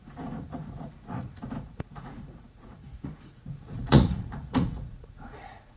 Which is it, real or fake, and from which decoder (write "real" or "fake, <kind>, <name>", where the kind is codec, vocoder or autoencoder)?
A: fake, vocoder, Vocos